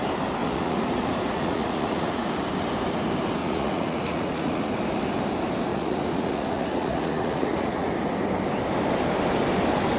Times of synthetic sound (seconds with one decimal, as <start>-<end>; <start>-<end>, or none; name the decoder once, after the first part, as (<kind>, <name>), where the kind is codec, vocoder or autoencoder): 0.4-2.3 (vocoder, Vocos); 3.4-4.7; 5.7-7.9